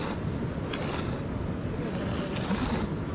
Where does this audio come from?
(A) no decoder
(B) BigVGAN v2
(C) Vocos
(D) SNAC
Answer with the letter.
A